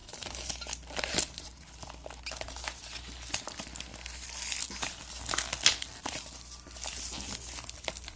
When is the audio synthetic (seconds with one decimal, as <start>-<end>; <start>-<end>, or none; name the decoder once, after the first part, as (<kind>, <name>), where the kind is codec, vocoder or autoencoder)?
0.0-1.5 (vocoder, BigVGAN v2); 5.0-8.2